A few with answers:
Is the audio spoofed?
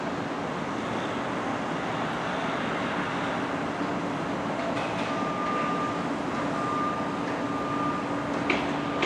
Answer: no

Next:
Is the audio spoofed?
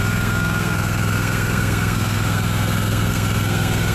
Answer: yes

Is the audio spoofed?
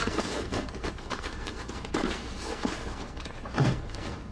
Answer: yes